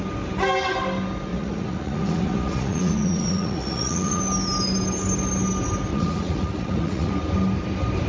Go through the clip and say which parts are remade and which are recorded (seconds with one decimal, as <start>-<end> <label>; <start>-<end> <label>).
0.0-1.3 recorded; 1.3-4.2 remade; 4.2-5.9 recorded; 5.9-7.1 remade; 7.1-8.1 recorded